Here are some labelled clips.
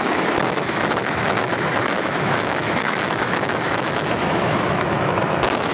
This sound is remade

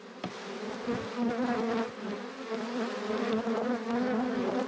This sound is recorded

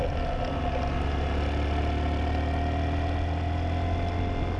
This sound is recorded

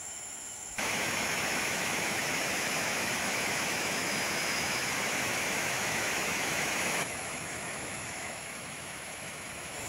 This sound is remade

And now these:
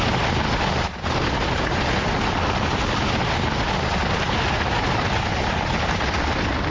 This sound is recorded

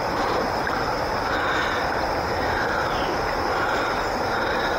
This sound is recorded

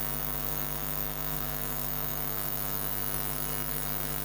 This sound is remade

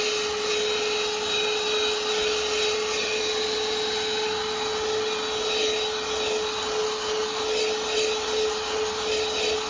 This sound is recorded